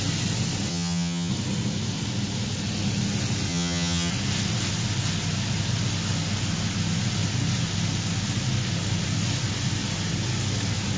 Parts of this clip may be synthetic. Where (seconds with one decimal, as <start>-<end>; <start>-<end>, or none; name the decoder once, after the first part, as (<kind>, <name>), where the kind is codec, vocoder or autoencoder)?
0.7-1.3 (vocoder, HiFi-GAN); 3.5-4.1